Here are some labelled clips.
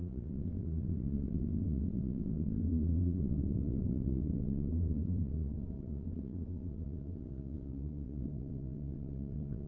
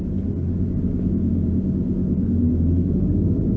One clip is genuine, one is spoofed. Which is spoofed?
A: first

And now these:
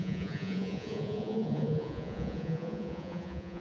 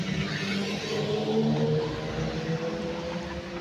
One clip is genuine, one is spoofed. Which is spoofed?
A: first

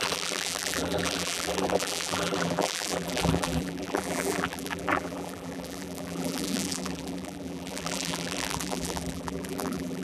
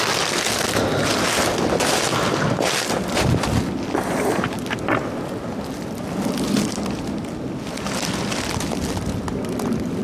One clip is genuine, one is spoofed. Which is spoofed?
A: first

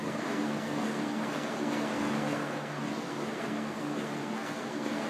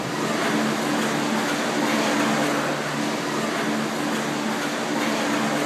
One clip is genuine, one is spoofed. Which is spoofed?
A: first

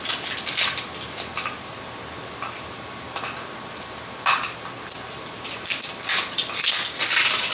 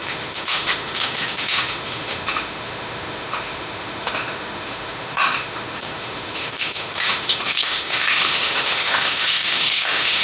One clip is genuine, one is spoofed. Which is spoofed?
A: second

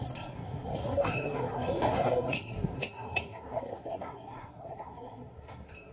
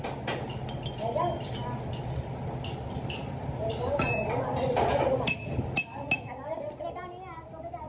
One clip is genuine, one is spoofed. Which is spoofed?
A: first